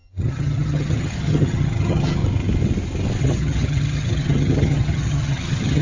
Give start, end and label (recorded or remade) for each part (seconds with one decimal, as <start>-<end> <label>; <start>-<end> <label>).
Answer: 0.0-2.2 remade; 2.2-3.2 recorded; 3.2-5.8 remade